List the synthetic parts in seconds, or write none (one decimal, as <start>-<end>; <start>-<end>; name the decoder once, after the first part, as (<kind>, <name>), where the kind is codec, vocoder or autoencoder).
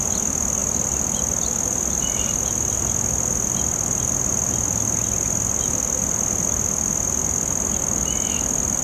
none